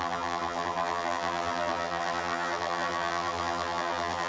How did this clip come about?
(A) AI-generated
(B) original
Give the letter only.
A